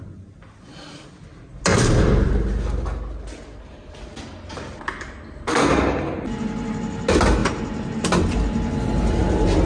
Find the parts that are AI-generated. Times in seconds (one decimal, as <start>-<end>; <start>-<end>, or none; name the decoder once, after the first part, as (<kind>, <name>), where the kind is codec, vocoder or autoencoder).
none